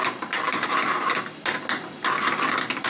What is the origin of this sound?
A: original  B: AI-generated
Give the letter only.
A